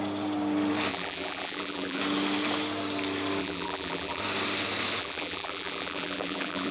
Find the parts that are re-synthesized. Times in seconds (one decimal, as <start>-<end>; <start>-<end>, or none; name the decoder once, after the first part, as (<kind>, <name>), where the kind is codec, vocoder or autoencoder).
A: 0.9-2.0 (vocoder, BigVGAN v2); 3.4-4.2; 5.0-6.7